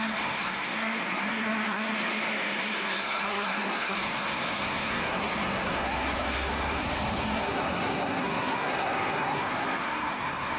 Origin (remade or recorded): remade